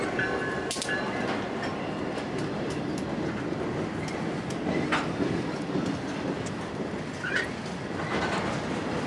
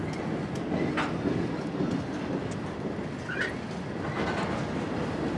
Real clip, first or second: second